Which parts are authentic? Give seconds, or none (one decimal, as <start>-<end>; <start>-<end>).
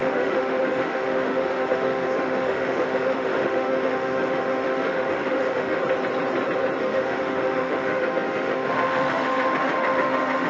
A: 5.8-6.8